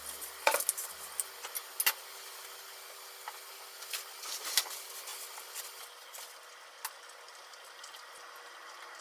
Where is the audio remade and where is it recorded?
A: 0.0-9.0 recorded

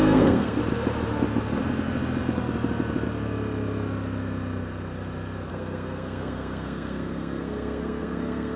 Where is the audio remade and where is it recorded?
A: 0.0-0.6 remade; 0.6-5.5 recorded; 5.5-8.6 remade

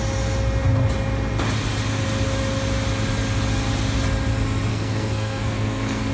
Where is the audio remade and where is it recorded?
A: 0.0-4.7 recorded; 4.7-6.1 remade